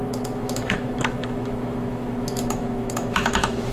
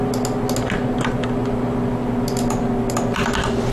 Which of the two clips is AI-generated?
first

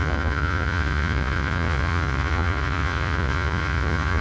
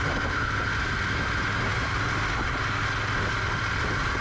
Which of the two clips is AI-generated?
first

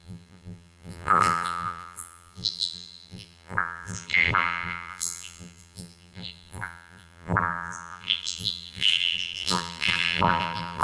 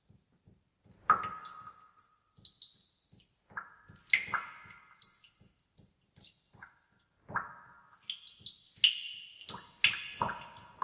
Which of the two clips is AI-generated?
first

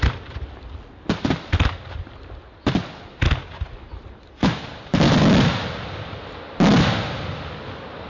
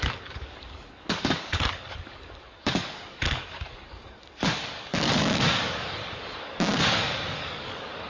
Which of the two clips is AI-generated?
second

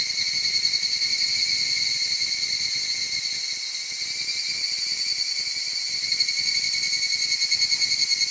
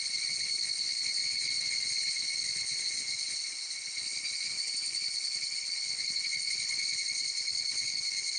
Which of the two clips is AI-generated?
second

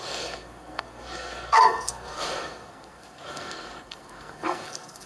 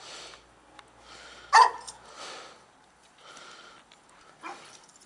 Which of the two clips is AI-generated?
first